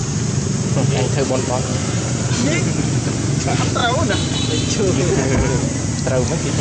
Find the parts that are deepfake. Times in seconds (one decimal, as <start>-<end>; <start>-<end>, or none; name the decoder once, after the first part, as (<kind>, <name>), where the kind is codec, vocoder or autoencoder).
0.0-1.1 (vocoder, BigVGAN v2); 1.7-2.3